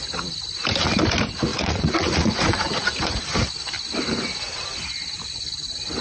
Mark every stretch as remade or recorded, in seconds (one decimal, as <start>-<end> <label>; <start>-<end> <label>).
0.0-1.5 recorded; 1.5-3.2 remade; 3.2-6.0 recorded